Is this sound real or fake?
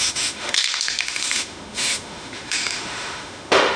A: fake